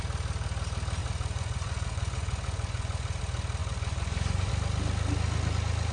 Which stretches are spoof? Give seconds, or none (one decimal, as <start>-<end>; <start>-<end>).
1.0-3.2; 3.6-4.5